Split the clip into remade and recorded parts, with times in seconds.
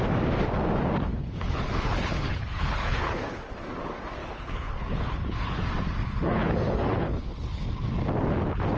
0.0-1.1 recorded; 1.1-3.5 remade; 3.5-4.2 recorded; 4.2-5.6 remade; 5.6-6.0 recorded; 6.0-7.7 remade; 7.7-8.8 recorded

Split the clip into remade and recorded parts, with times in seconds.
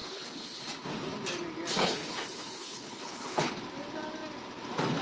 0.0-0.6 remade; 0.6-1.8 recorded; 1.8-3.6 remade; 3.6-5.0 recorded